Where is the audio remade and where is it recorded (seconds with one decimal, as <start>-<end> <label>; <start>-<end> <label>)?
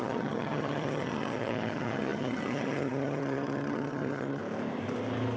0.0-4.4 remade; 4.4-5.4 recorded